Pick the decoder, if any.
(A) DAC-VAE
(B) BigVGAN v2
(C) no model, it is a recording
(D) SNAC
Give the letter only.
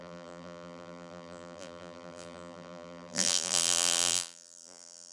B